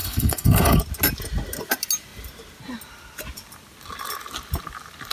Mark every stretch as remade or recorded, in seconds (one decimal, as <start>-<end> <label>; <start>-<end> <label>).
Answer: 0.0-0.8 remade; 0.8-5.1 recorded